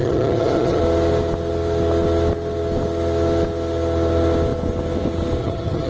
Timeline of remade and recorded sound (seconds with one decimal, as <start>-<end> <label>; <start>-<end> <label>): 0.0-0.8 remade; 0.8-5.4 recorded; 5.4-5.9 remade